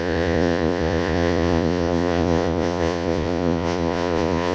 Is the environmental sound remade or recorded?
remade